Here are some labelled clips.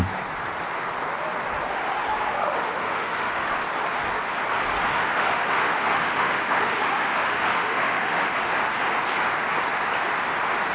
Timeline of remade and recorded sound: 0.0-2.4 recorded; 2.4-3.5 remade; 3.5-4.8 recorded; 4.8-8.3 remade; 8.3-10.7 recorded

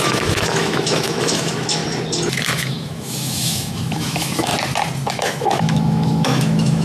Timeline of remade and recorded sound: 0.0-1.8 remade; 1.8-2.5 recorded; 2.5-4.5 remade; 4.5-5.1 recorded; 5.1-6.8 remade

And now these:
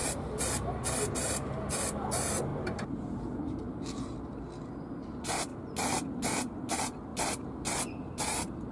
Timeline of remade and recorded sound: 0.0-8.7 recorded